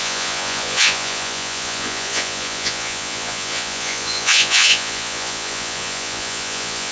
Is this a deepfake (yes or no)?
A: yes